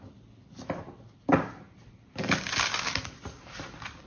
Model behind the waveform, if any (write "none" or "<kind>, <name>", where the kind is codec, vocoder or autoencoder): none